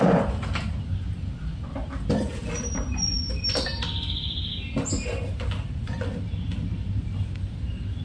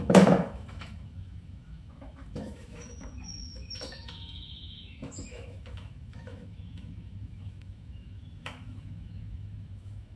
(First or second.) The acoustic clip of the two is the first